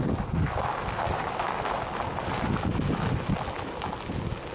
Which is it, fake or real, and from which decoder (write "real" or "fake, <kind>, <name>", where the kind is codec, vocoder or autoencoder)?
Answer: real